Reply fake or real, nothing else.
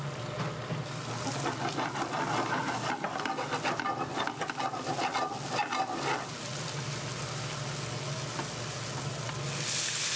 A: real